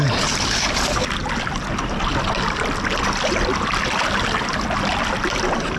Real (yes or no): yes